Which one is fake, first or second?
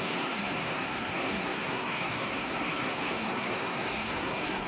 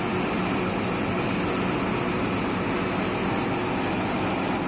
first